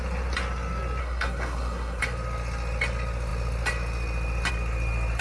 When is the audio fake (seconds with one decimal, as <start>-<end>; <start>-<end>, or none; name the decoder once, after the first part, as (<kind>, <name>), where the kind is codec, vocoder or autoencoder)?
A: 1.0-2.0 (codec, SNAC)